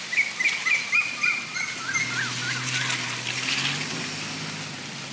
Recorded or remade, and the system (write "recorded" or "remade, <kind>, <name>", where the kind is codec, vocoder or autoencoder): recorded